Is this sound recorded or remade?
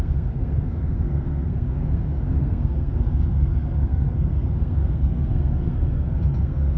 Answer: remade